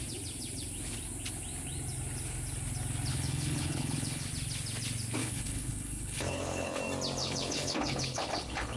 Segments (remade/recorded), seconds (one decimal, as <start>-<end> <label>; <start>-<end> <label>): 0.0-3.1 recorded; 3.1-4.3 remade; 4.3-5.2 recorded; 5.2-6.8 remade; 6.8-7.2 recorded; 7.2-8.8 remade